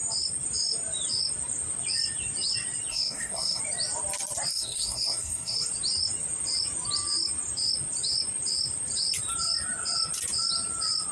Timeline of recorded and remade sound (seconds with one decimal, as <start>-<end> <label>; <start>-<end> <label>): 0.0-2.9 recorded; 2.9-3.6 remade; 3.6-4.5 recorded; 4.5-5.7 remade; 5.7-11.1 recorded